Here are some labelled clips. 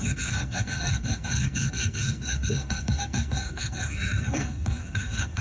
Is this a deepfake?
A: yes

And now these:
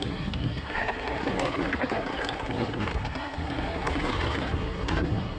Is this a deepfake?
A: yes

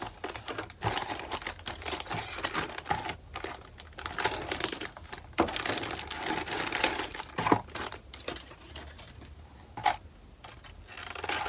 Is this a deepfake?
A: no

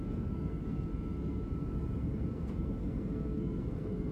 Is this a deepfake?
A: yes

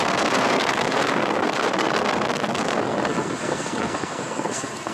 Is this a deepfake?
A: yes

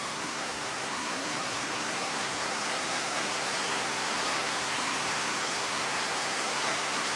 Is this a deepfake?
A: yes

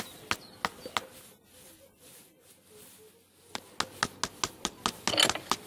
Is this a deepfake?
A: no